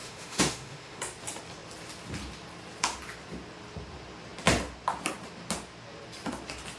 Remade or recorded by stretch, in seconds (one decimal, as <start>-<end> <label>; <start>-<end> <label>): 0.0-1.0 remade; 1.0-6.8 recorded